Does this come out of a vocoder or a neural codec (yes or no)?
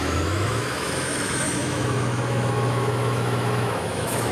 yes